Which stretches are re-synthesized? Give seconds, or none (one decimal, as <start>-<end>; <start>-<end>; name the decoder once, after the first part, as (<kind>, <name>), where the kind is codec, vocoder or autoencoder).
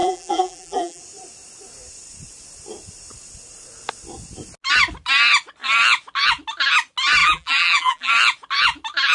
0.0-1.0 (vocoder, BigVGAN v2); 7.2-8.1